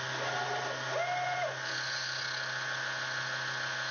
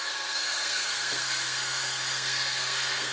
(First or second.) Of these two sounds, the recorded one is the first